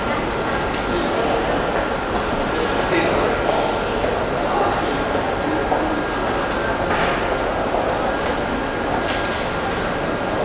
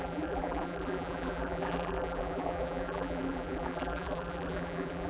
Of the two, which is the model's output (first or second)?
second